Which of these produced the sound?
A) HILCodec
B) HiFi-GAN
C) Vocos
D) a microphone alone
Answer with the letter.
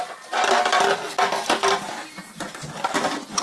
D